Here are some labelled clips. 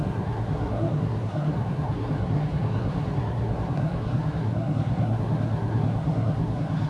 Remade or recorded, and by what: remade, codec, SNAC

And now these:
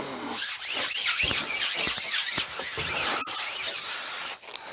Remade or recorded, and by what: recorded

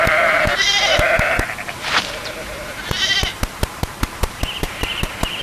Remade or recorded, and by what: remade, vocoder, BigVGAN v2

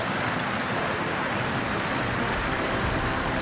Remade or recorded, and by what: recorded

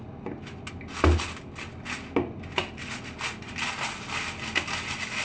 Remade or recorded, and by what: recorded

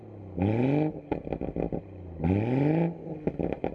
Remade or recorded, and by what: recorded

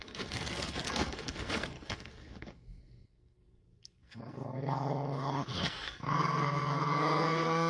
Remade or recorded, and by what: remade, codec, SNAC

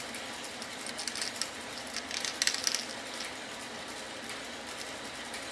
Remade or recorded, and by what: recorded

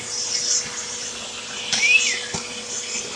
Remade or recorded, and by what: recorded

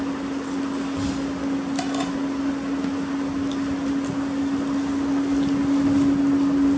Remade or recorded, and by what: recorded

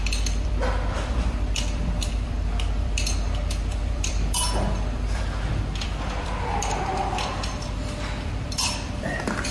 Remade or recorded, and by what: remade, vocoder, BigVGAN v2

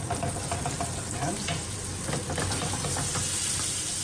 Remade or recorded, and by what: recorded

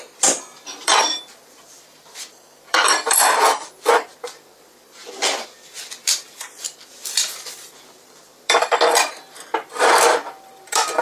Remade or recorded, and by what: remade, vocoder, BigVGAN v2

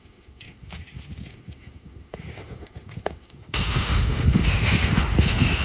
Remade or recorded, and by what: remade, autoencoder, DAC-VAE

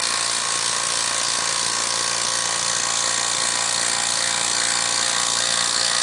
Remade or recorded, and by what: recorded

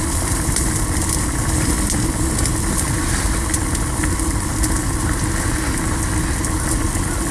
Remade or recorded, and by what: recorded